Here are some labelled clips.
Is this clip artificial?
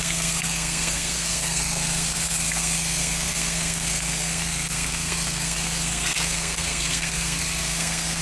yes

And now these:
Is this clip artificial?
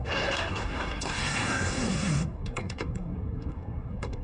yes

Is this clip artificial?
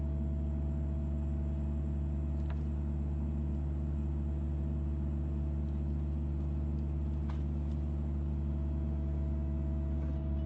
no